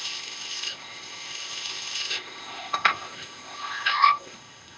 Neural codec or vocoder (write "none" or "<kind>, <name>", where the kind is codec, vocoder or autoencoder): codec, ZipCodec